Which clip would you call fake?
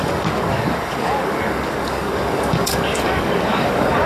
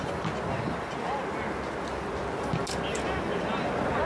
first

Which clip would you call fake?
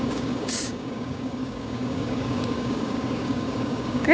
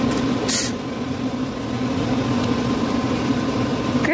first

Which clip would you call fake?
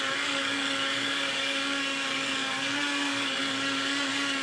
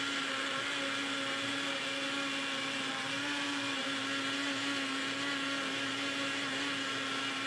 first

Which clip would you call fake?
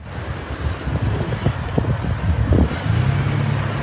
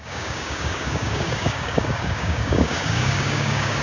second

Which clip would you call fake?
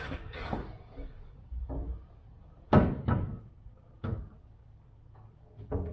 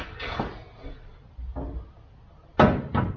first